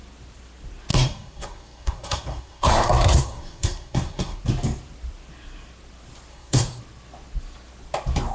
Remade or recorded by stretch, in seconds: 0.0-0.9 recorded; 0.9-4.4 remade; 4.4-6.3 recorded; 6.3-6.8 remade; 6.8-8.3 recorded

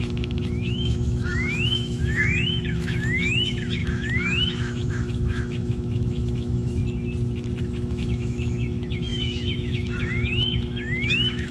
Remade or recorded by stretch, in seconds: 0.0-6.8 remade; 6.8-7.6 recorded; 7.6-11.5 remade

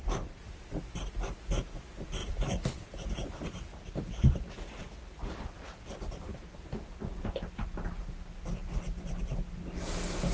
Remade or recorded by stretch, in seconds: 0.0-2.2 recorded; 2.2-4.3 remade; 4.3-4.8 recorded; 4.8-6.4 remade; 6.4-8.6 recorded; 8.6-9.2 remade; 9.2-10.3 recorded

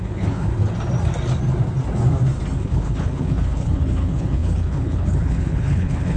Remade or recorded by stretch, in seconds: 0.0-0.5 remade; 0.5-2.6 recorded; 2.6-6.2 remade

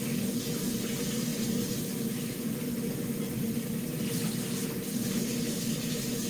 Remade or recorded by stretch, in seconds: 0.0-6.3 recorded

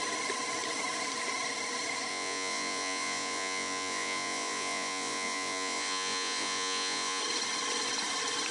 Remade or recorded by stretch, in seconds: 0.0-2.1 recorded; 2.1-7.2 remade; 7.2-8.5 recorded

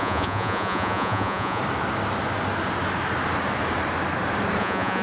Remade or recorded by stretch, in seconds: 0.0-1.6 remade; 1.6-4.6 recorded; 4.6-5.0 remade